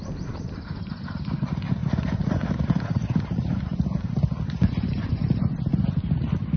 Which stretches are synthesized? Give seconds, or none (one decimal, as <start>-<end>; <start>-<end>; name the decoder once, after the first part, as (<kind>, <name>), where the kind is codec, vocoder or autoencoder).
0.0-5.7 (vocoder, BigVGAN v2)